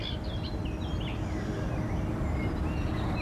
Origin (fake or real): real